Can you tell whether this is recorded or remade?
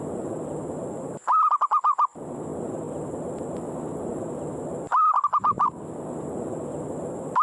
recorded